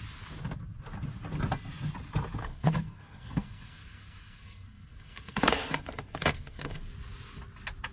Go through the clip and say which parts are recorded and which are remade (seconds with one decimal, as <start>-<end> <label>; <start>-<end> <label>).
0.0-2.4 recorded; 2.4-6.8 remade; 6.8-7.9 recorded